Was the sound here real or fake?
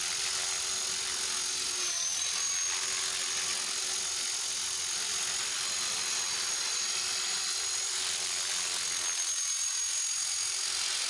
real